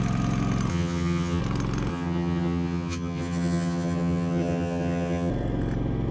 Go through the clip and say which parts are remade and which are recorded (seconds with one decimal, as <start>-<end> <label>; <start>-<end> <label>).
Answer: 0.0-0.7 recorded; 0.7-1.4 remade; 1.4-1.9 recorded; 1.9-5.3 remade; 5.3-6.1 recorded